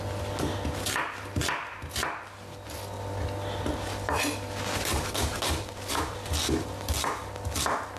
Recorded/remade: recorded